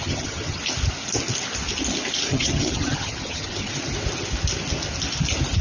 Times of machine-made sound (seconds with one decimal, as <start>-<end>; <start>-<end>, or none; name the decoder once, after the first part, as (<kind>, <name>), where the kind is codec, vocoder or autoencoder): 0.0-0.6 (vocoder, HiFi-GAN); 2.3-3.7